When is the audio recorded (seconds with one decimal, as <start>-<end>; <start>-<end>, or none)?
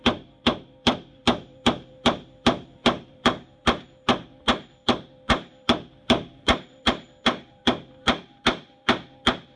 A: none